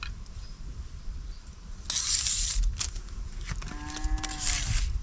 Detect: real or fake real